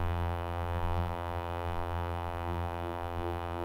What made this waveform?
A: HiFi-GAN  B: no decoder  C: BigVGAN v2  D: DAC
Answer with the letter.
C